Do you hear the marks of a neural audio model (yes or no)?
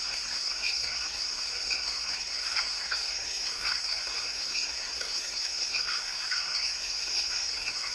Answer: yes